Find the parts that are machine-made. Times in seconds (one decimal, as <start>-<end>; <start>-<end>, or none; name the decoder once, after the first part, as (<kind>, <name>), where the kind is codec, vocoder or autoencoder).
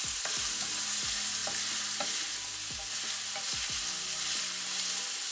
none